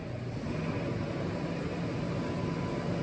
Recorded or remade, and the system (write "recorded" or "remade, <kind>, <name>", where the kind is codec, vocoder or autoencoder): recorded